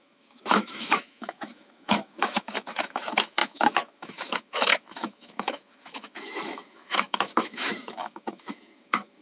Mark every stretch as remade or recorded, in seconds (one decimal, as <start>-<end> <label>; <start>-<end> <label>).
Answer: 0.0-9.2 remade